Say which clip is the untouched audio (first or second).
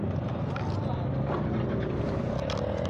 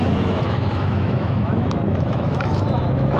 first